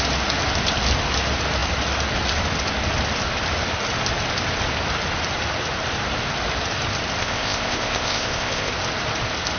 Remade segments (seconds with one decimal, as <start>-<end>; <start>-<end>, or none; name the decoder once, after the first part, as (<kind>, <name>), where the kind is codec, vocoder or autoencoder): 7.2-8.7 (codec, ZipCodec)